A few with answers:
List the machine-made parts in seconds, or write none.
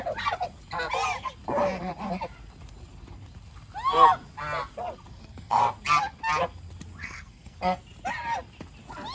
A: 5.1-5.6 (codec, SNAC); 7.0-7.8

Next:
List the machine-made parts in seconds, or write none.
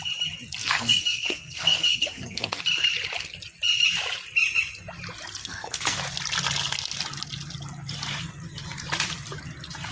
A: 0.6-2.6 (codec, SNAC); 5.4-6.0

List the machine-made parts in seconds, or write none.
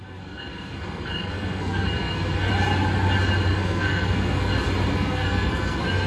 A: 0.0-2.5 (codec, SNAC); 3.5-4.5; 4.9-6.1